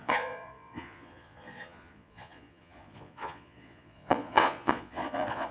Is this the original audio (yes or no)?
no